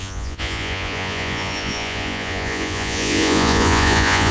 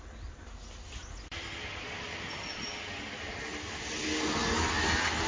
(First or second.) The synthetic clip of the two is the first